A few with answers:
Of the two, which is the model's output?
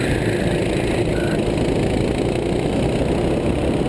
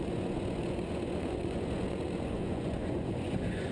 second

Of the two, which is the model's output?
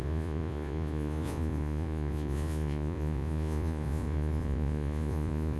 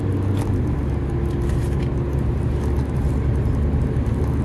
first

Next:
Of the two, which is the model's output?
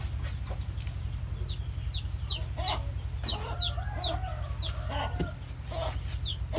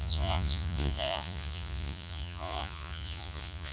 second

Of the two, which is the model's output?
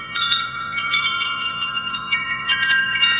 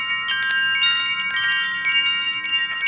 first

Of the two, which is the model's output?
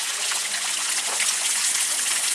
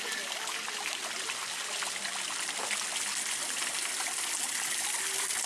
first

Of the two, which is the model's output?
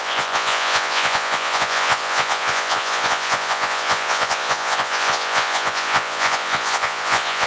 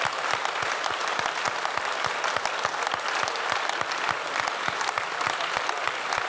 first